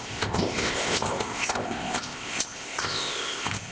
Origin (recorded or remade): remade